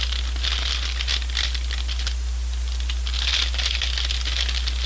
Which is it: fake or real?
real